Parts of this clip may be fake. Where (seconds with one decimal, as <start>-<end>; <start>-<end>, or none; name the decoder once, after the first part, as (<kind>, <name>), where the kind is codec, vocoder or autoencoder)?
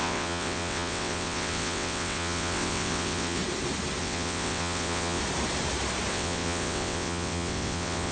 0.0-3.4 (vocoder, WaveNeXt); 4.0-5.2; 6.1-8.1